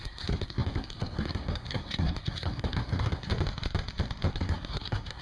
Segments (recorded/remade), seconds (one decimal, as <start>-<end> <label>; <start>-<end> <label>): 0.0-3.3 remade; 3.3-4.3 recorded; 4.3-5.2 remade